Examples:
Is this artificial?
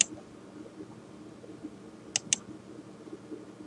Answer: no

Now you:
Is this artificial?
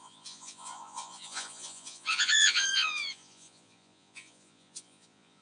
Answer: yes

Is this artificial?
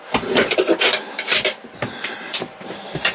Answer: no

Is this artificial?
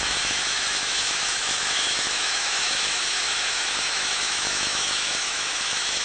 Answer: yes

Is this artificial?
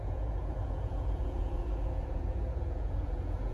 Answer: yes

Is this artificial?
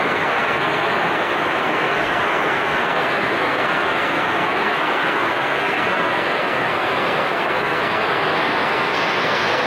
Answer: yes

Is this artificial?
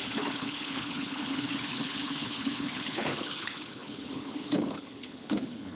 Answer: yes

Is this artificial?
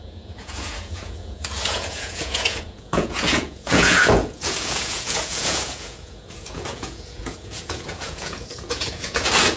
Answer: yes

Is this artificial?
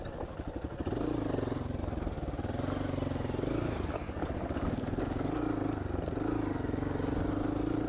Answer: no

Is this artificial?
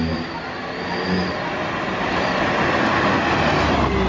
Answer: no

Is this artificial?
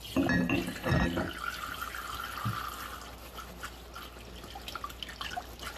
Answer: no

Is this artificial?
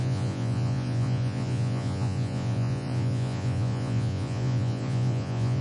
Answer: yes